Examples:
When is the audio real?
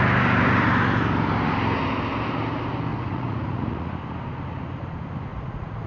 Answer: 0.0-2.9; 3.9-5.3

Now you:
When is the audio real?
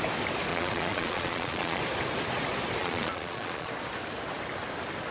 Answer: 0.0-0.5; 1.8-2.8; 3.7-5.1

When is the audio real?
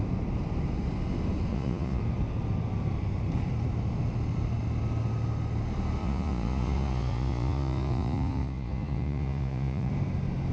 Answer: 0.0-1.5; 2.0-6.0; 9.9-10.5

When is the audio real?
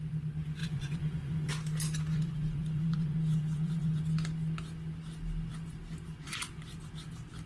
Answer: 0.0-0.6; 1.5-2.1; 4.0-7.5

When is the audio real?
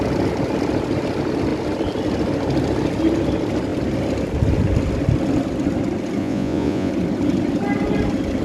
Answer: 0.0-6.2; 6.9-8.4